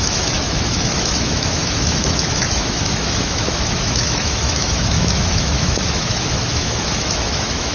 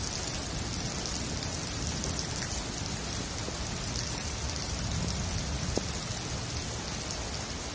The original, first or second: second